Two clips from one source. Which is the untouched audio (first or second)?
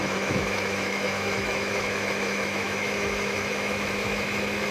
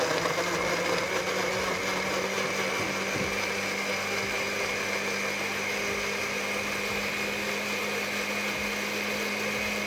second